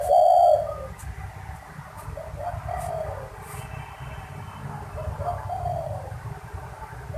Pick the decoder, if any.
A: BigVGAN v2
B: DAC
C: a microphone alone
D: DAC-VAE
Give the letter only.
C